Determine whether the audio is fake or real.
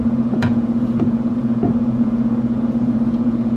fake